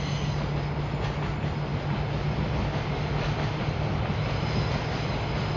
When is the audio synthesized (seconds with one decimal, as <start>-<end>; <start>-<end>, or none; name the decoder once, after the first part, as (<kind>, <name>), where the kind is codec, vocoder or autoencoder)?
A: none